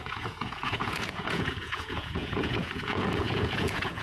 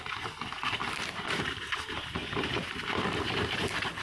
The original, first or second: second